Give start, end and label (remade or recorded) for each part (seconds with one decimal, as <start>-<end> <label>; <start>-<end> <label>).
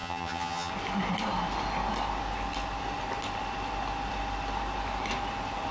0.0-0.7 remade; 0.7-5.7 recorded